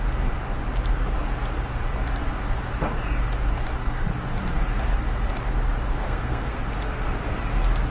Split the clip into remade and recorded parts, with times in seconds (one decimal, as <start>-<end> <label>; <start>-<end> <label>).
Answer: 0.0-6.0 recorded; 6.0-6.6 remade; 6.6-7.9 recorded